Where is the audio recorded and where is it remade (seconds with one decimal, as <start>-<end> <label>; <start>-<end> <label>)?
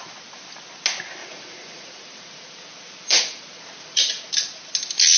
0.0-1.2 recorded; 1.2-4.3 remade; 4.3-5.2 recorded